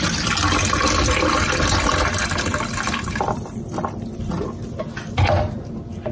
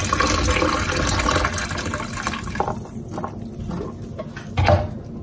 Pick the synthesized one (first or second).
first